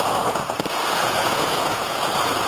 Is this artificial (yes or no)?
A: yes